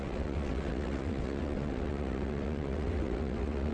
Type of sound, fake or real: fake